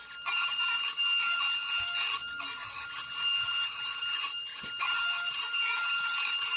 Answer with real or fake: real